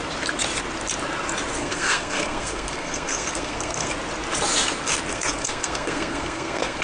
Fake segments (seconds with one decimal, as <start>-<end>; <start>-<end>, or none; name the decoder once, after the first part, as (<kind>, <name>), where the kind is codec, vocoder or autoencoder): 1.6-3.9 (codec, SNAC); 5.1-6.8